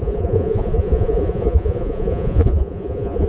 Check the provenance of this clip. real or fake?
fake